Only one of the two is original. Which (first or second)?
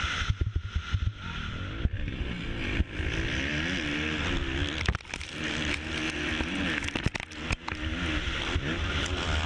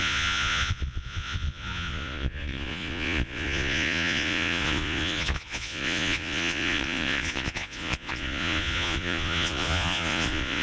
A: first